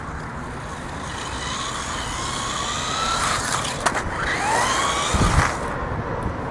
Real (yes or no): yes